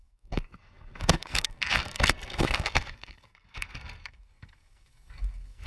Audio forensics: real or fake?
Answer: fake